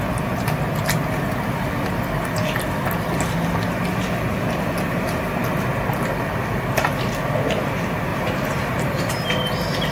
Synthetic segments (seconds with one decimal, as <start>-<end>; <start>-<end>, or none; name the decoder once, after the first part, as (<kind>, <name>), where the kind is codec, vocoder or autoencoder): 8.1-9.1 (vocoder, BigVGAN v2)